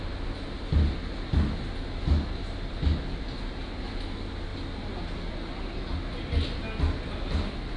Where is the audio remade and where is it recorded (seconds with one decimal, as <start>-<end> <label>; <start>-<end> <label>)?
0.0-7.8 recorded